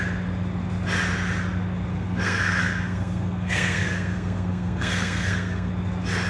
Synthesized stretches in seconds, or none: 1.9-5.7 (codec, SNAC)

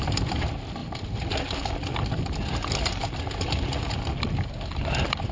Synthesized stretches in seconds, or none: none

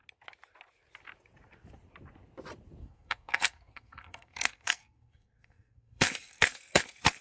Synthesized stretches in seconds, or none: 2.8-7.2 (codec, SNAC)

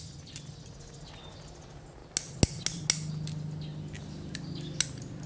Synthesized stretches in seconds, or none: none

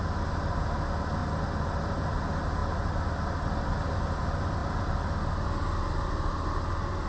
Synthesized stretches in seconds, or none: none

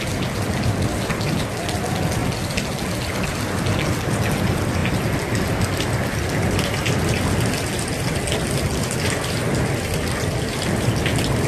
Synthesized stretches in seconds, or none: none